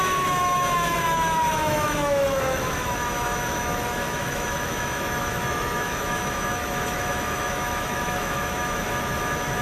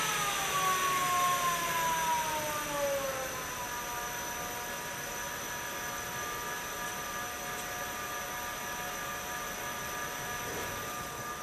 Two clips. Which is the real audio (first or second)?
second